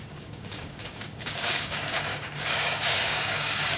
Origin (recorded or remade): remade